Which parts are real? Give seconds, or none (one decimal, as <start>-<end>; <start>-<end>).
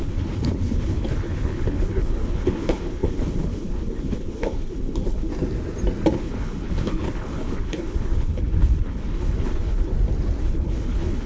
5.3-6.1; 9.9-10.4